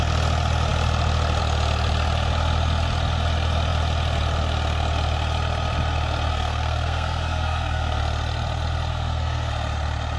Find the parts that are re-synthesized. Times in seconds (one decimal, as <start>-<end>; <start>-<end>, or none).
6.3-8.0; 8.9-9.5